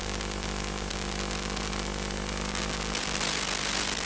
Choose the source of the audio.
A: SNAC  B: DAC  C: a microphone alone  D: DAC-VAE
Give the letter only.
C